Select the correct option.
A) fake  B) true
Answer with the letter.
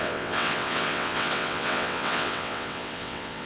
A